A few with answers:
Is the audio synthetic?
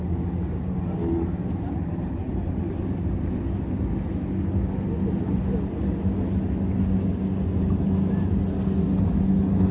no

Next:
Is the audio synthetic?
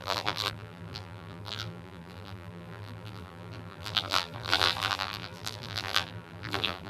yes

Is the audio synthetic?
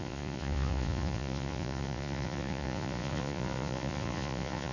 yes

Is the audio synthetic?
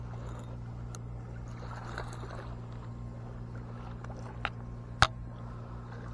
no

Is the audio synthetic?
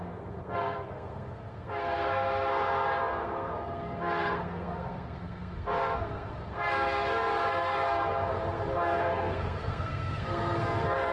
yes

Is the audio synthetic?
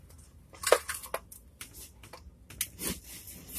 no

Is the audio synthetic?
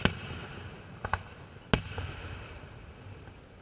no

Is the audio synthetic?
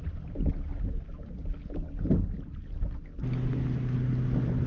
no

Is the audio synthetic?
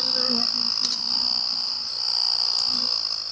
no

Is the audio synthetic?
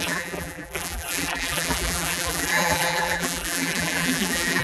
yes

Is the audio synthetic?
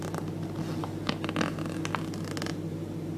no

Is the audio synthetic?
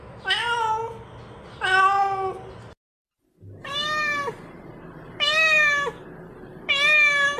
no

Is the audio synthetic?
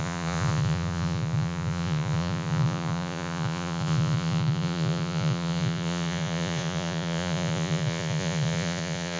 yes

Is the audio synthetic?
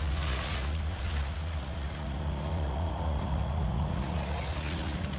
yes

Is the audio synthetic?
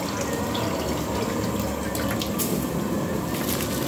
no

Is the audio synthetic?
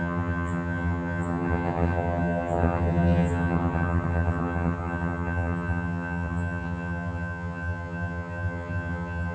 yes